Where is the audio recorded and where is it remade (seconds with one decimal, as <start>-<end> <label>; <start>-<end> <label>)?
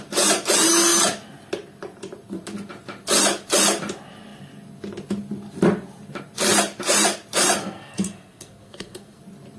0.0-7.6 recorded; 7.6-9.2 remade; 9.2-9.6 recorded